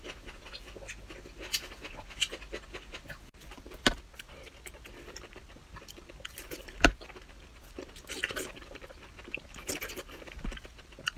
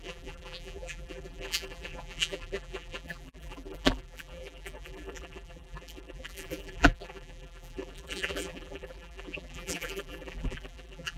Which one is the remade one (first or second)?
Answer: second